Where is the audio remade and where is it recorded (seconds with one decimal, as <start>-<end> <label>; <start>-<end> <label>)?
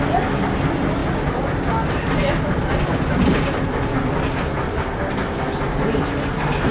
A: 0.0-6.7 recorded